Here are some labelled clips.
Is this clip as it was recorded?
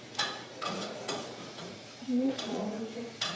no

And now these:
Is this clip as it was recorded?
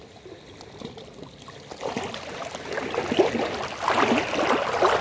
yes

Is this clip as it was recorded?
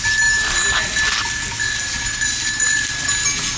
yes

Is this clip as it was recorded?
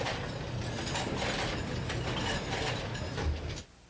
yes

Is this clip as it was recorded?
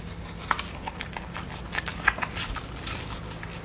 yes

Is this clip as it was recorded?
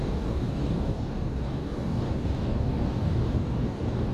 no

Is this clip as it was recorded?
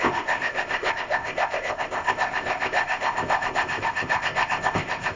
no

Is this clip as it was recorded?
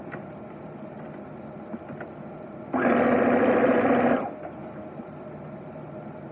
yes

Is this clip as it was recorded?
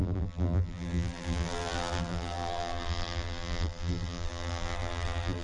no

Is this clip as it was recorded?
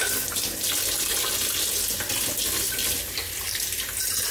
yes